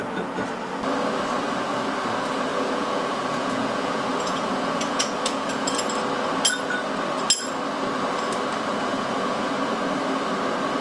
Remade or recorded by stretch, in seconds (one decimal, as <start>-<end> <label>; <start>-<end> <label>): 0.0-2.5 recorded; 2.5-5.9 remade; 5.9-8.9 recorded; 8.9-9.5 remade; 9.5-10.8 recorded